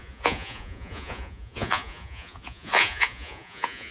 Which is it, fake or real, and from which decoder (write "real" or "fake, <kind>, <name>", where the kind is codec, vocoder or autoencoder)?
fake, vocoder, Vocos